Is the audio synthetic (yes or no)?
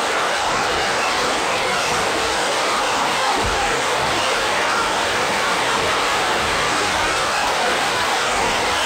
yes